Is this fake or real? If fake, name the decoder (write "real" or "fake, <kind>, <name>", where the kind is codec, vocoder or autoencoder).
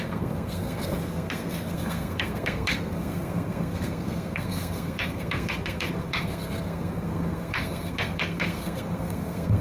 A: fake, codec, SNAC